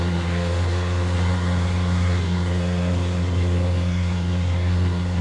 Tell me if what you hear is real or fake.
fake